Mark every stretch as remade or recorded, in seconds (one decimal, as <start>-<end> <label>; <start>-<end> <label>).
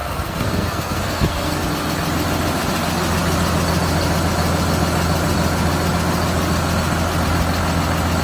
0.0-1.6 remade; 1.6-8.2 recorded